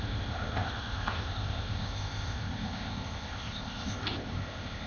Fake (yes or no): yes